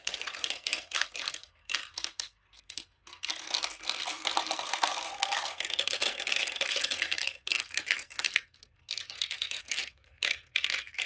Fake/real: fake